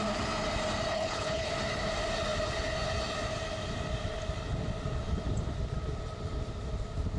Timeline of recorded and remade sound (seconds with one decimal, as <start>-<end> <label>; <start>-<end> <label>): 0.0-0.9 recorded; 0.9-1.5 remade; 1.5-7.2 recorded